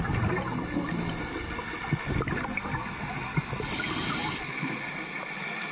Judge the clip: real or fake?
real